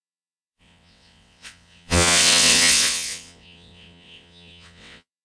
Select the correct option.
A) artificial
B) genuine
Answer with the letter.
A